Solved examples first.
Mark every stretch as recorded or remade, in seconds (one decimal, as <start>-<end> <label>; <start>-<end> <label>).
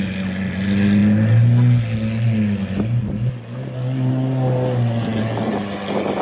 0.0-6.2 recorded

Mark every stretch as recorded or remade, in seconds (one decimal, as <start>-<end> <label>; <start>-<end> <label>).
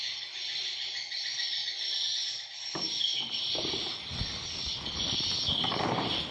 0.0-6.3 recorded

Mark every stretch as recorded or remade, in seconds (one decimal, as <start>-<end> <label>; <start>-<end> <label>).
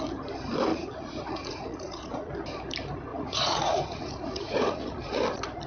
0.0-0.7 recorded; 0.7-2.3 remade; 2.3-3.1 recorded; 3.1-5.1 remade; 5.1-5.7 recorded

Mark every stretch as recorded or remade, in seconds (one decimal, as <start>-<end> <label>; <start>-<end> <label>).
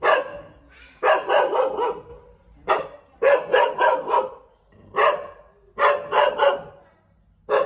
0.0-2.1 recorded; 2.1-2.7 remade; 2.7-7.7 recorded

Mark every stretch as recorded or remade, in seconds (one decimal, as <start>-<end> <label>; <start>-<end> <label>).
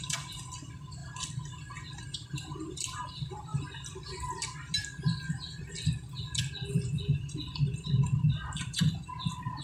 0.0-1.0 remade; 1.0-2.0 recorded; 2.0-3.5 remade; 3.5-6.7 recorded; 6.7-9.6 remade